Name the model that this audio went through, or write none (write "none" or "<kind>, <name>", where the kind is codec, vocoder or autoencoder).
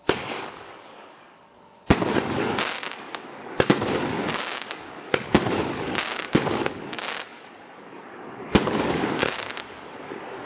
codec, DAC